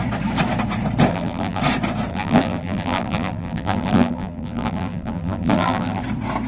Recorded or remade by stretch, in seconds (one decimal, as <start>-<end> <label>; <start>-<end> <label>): 0.0-1.1 recorded; 1.1-1.6 remade; 1.6-2.1 recorded; 2.1-6.0 remade; 6.0-6.5 recorded